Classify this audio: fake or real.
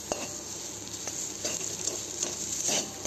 real